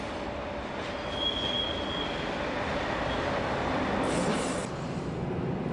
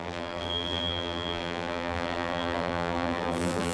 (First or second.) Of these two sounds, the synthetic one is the second